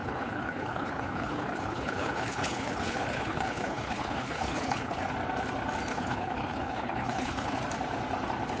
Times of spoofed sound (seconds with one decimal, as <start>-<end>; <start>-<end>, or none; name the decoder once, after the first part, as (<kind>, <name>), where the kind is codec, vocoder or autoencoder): 0.0-5.1 (codec, HILCodec); 5.9-7.6